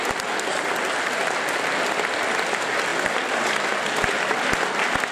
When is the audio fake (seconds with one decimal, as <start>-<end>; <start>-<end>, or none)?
none